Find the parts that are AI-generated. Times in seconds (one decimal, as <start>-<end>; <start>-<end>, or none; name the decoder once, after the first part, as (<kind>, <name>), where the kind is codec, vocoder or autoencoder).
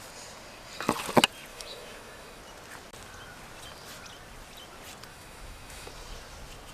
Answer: 1.5-2.4 (autoencoder, DAC-VAE); 5.1-5.9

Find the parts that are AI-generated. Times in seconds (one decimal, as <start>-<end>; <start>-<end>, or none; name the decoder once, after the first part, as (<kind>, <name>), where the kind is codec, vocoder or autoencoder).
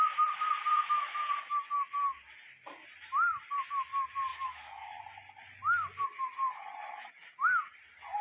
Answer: 0.8-1.3 (autoencoder, DAC-VAE); 4.3-5.0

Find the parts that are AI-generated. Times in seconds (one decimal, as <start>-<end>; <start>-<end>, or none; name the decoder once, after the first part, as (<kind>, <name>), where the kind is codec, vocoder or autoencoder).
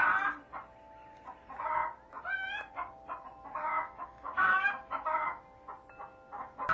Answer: 3.6-5.4 (autoencoder, DAC-VAE)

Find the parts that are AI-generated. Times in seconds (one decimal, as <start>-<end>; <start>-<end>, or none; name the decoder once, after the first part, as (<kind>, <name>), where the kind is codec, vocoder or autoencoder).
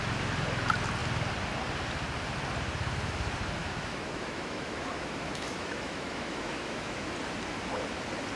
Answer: 3.6-7.1 (autoencoder, DAC-VAE)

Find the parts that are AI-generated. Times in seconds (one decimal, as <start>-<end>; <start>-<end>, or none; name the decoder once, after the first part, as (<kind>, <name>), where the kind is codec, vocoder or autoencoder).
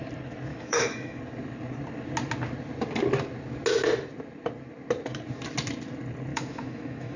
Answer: 0.5-1.2 (autoencoder, DAC-VAE); 6.3-7.2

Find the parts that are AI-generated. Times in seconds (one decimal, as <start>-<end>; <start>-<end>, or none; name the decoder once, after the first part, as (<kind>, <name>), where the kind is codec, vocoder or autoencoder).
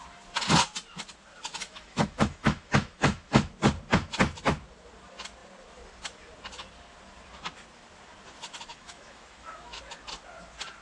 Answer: 1.5-3.5 (autoencoder, DAC-VAE); 8.7-9.8